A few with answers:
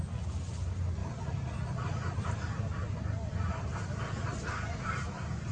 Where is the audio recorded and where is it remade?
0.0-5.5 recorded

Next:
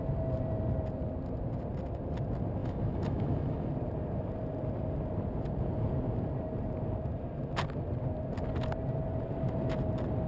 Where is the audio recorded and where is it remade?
0.0-2.6 recorded; 2.6-3.7 remade; 3.7-10.3 recorded

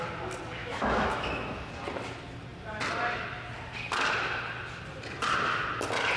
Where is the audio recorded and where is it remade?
0.0-0.6 recorded; 0.6-1.7 remade; 1.7-6.2 recorded